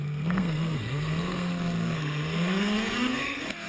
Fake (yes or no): yes